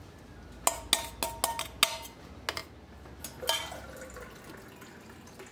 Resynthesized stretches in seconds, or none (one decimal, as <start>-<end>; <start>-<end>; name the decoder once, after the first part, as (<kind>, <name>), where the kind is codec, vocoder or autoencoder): none